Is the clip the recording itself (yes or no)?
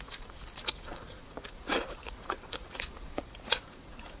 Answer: no